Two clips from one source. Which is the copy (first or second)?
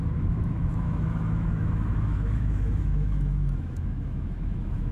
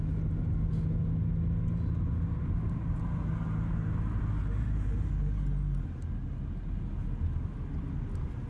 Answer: first